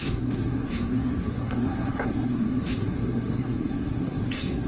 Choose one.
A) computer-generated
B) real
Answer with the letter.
A